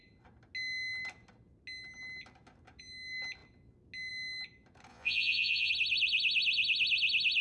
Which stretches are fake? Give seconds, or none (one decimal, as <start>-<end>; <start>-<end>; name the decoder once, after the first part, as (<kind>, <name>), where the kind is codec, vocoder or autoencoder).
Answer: 4.9-5.7 (vocoder, Vocos)

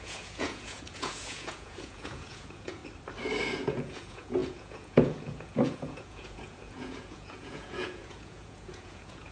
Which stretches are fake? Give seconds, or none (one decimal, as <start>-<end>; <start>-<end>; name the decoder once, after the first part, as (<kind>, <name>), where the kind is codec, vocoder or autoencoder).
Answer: 0.0-2.8 (vocoder, Vocos); 3.5-9.3

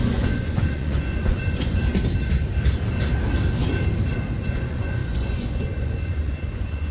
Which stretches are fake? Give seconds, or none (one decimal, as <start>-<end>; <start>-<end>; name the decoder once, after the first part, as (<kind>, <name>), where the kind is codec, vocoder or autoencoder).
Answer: 0.0-1.8 (vocoder, Vocos); 4.4-6.9

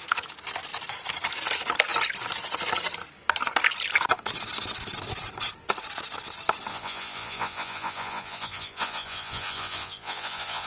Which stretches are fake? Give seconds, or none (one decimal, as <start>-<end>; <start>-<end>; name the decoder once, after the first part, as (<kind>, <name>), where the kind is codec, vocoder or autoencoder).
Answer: 6.7-10.7 (vocoder, Vocos)

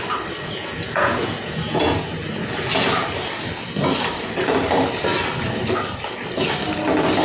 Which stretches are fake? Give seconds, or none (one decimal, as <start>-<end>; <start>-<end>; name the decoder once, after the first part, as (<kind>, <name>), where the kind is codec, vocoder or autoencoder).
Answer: 0.4-2.1 (vocoder, Vocos)

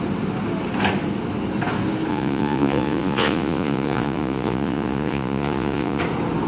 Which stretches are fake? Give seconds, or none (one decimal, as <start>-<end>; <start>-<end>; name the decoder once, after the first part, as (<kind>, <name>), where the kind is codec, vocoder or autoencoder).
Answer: 2.1-6.0 (vocoder, Vocos)

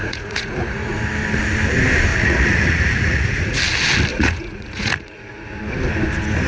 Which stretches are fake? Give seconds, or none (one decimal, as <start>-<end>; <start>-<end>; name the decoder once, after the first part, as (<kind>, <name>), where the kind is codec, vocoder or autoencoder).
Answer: 0.0-1.0 (vocoder, Vocos); 2.1-3.6; 4.1-5.6

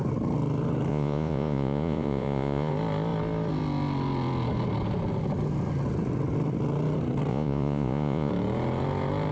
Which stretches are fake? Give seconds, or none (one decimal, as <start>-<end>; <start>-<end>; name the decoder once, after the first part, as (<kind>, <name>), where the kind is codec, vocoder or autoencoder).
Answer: 0.9-2.7 (vocoder, Vocos); 7.3-8.3